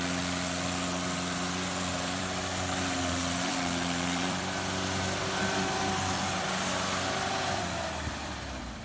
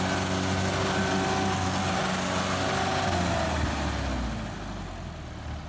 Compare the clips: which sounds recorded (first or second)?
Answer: second